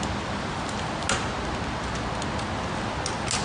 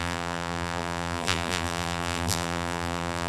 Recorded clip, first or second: first